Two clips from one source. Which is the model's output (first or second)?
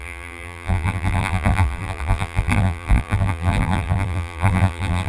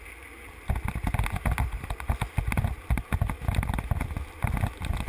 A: first